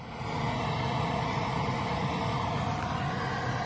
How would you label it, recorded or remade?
recorded